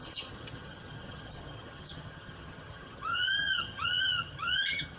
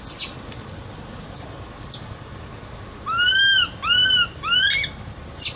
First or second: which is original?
second